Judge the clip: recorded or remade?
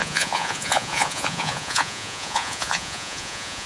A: remade